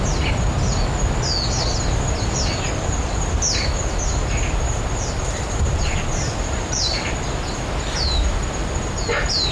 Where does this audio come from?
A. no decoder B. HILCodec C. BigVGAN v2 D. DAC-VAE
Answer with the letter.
A